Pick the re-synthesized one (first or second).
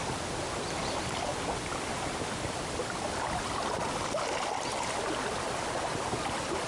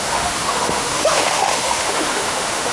second